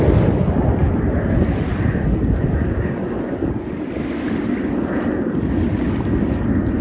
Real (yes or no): yes